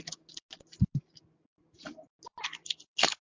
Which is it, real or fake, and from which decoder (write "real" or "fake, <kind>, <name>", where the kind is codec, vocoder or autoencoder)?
real